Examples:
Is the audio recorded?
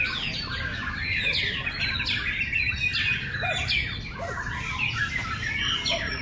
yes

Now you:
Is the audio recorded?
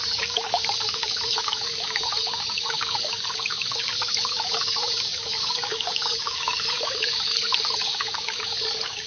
no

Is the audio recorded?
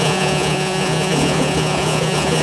no